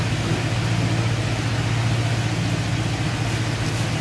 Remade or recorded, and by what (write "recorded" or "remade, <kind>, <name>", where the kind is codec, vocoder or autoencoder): recorded